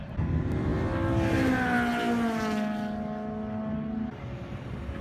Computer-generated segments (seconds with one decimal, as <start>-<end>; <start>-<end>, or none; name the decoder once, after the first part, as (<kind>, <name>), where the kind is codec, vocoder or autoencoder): none